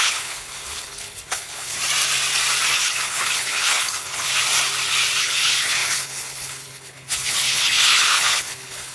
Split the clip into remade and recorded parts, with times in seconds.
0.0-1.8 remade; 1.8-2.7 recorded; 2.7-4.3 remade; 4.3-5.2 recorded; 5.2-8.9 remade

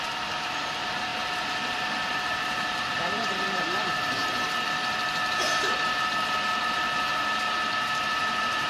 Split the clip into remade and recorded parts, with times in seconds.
0.0-8.7 remade

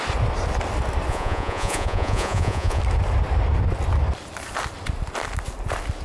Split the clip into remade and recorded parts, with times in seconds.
0.0-1.1 recorded; 1.1-2.8 remade; 2.8-6.0 recorded

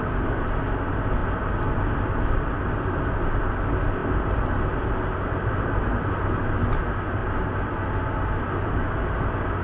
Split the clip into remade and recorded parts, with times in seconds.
0.0-9.6 recorded

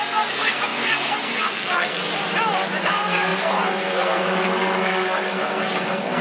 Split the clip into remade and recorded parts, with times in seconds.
0.0-2.0 remade; 2.0-2.8 recorded; 2.8-6.2 remade

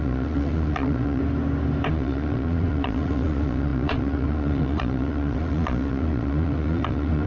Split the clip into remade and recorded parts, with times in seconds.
0.0-1.2 remade; 1.2-1.9 recorded; 1.9-7.3 remade